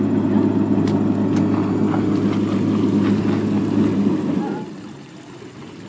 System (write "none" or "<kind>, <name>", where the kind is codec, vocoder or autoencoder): none